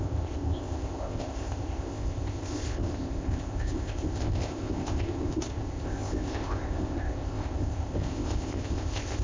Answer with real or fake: fake